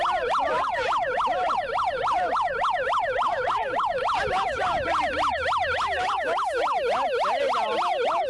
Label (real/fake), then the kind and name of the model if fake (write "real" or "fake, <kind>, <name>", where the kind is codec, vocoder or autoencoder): real